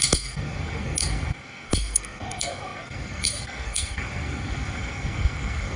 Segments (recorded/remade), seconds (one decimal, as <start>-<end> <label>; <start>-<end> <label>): 0.0-5.8 remade

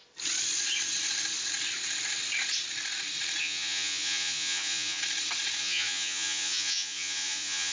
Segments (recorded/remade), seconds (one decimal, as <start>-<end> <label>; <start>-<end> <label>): 0.0-3.4 recorded; 3.4-5.0 remade; 5.0-5.6 recorded; 5.6-7.7 remade